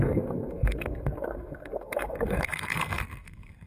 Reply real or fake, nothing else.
fake